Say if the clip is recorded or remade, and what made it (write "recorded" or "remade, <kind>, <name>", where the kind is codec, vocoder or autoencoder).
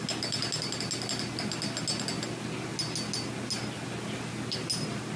recorded